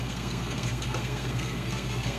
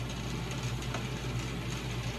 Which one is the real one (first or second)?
second